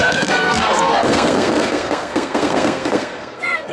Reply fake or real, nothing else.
fake